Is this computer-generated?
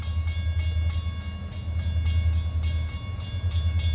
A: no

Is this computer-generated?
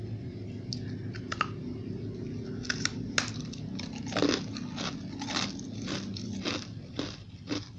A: no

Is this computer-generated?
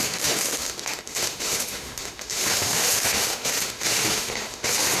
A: yes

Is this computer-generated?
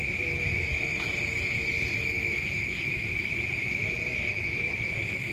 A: yes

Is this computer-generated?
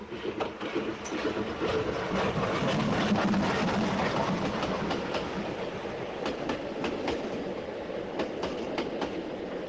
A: no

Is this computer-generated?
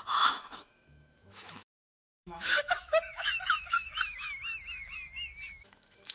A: yes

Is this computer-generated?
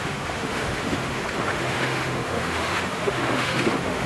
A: yes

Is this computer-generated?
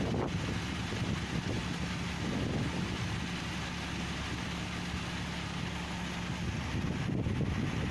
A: no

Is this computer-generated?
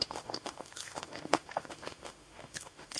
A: yes